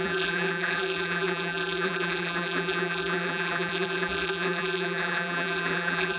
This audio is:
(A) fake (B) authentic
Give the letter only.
A